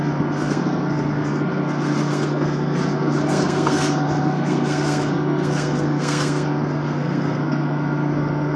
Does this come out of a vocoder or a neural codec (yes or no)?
yes